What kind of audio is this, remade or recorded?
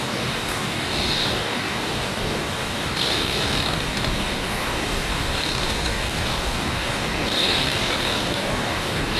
remade